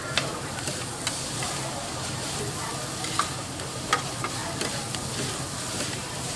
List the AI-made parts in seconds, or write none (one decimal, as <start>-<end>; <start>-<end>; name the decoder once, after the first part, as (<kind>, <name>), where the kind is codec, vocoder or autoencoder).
0.0-2.7 (vocoder, BigVGAN v2); 3.3-4.4; 5.7-6.4